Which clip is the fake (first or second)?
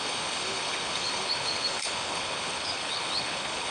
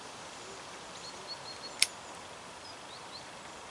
first